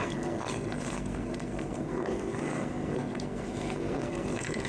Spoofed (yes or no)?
yes